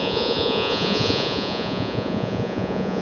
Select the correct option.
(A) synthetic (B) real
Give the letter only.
A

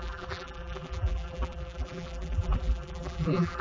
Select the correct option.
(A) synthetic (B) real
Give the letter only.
A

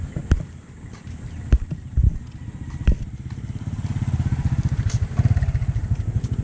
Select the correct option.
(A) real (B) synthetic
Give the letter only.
A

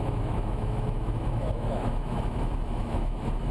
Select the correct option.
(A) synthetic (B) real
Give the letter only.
A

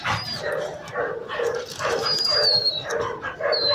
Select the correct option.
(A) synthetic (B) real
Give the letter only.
A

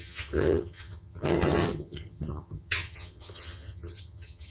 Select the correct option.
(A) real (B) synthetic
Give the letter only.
B